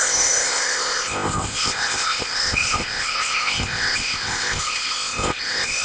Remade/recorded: remade